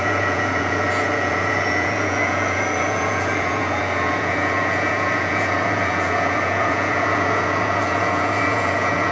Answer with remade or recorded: remade